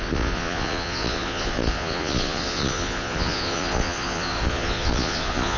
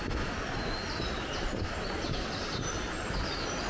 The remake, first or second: first